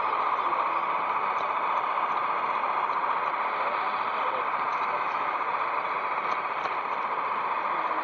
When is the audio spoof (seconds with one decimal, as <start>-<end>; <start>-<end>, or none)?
4.7-5.5